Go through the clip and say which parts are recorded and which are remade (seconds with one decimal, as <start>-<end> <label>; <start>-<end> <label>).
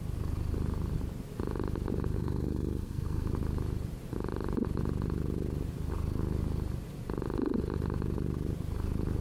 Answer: 0.0-2.1 recorded; 2.1-3.3 remade; 3.3-9.2 recorded